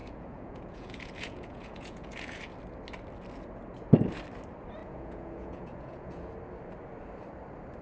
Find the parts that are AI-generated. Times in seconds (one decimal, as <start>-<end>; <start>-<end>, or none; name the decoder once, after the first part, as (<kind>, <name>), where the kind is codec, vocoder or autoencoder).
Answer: 0.0-2.4 (vocoder, Vocos); 4.8-6.3